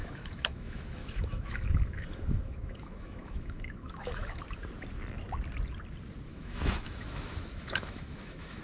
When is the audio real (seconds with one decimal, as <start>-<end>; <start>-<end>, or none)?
4.4-6.3